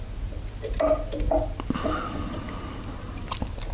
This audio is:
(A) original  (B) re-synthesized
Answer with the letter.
A